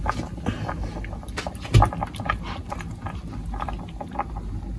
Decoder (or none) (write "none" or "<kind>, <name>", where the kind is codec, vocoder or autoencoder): none